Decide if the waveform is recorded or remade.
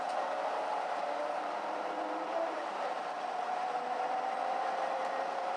remade